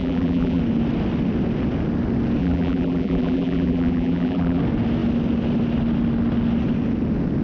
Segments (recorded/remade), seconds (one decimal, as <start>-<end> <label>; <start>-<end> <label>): 0.0-0.6 remade; 0.6-2.4 recorded; 2.4-4.6 remade; 4.6-7.4 recorded